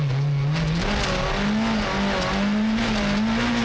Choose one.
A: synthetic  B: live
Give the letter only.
B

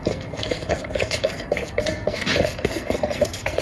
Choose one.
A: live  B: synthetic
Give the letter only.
B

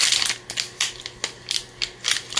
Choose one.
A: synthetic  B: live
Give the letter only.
B